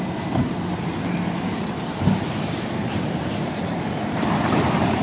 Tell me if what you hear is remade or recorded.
remade